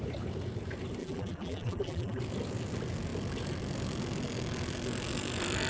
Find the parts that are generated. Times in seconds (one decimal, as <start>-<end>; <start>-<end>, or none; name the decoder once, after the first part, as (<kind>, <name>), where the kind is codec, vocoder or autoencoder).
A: 1.0-2.2 (vocoder, BigVGAN v2)